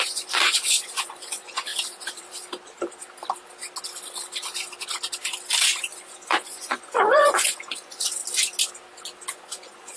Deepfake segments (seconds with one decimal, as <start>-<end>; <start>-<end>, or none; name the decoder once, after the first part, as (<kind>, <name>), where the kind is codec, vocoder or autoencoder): 0.0-1.7 (vocoder, Vocos); 5.8-8.2; 9.3-10.0